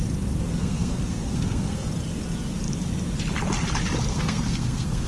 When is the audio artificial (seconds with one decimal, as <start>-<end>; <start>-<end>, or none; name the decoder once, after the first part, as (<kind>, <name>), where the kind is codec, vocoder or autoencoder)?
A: 0.6-1.9 (codec, SNAC); 4.1-5.1